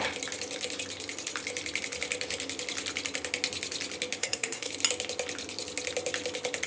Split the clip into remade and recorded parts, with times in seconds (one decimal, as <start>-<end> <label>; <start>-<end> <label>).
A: 0.0-4.2 recorded; 4.2-4.7 remade; 4.7-6.7 recorded